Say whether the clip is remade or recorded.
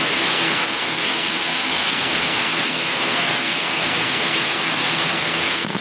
remade